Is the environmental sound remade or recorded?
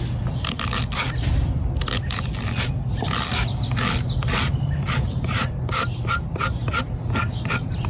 recorded